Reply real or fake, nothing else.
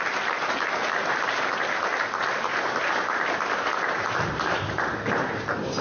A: real